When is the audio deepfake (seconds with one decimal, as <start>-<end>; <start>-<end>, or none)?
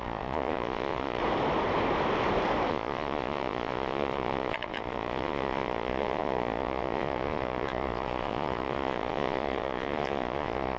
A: 0.0-1.2; 2.7-10.8